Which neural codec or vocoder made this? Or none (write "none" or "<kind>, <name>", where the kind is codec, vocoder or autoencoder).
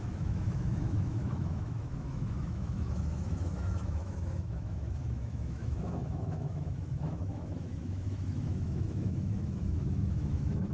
autoencoder, DAC-VAE